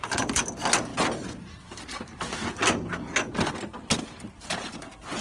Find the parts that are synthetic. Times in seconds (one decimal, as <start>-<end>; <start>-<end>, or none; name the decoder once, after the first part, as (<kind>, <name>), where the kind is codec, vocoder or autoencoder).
none

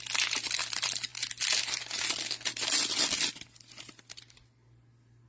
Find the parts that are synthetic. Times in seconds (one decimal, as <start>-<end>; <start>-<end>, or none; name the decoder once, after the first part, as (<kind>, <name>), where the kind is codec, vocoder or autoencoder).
none